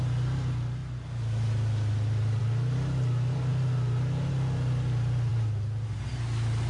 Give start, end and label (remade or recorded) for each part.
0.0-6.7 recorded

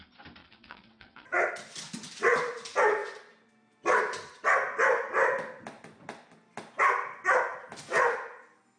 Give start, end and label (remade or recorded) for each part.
0.0-0.4 recorded; 0.4-1.5 remade; 1.5-8.8 recorded

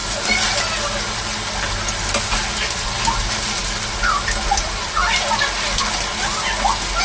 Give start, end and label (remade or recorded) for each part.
0.0-7.0 recorded